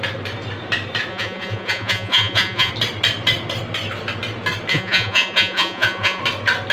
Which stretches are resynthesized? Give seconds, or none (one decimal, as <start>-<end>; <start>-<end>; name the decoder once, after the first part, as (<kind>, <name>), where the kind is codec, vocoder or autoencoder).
1.1-2.7 (vocoder, Vocos); 4.7-6.2